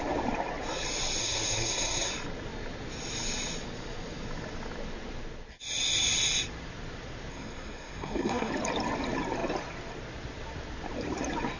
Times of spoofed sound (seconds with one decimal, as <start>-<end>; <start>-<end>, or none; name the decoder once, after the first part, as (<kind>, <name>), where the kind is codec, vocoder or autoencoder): 1.2-2.1 (codec, SNAC); 7.3-8.5